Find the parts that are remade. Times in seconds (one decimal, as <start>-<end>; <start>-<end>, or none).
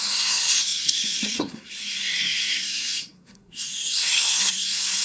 0.0-5.0